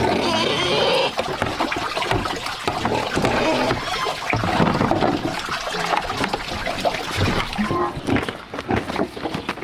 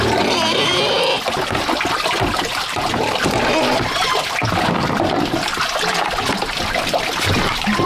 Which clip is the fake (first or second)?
second